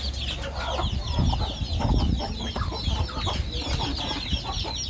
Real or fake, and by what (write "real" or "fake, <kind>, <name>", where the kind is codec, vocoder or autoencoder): real